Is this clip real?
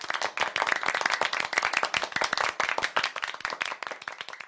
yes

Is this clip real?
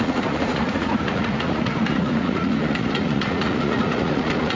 no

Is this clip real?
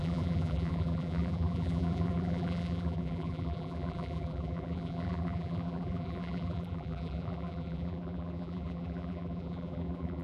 no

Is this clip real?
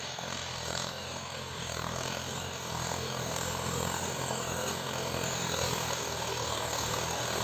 no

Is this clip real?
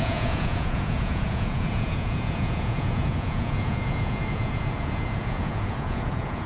no